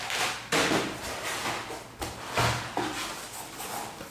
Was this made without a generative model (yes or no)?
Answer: yes